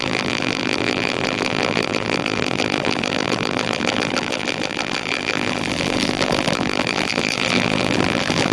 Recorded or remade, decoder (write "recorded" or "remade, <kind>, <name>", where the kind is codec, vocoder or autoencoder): remade, vocoder, BigVGAN v2